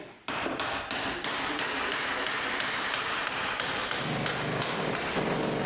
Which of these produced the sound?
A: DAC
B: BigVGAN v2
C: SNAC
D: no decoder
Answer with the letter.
D